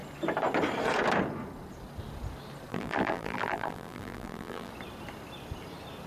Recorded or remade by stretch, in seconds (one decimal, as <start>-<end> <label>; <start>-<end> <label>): 0.0-2.7 recorded; 2.7-4.7 remade; 4.7-6.1 recorded